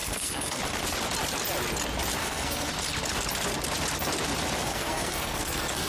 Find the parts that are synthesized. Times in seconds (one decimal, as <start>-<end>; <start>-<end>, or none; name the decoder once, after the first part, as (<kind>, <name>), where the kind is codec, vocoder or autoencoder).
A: 0.0-0.6 (codec, SNAC); 2.2-2.7; 4.6-5.9